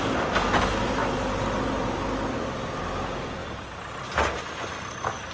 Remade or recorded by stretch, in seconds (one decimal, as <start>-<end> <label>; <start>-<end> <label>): 0.0-5.3 recorded